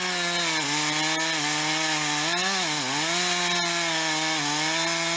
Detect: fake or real real